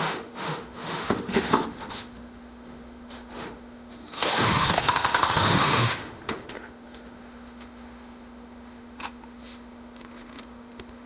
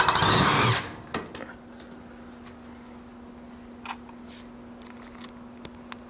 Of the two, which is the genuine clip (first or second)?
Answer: second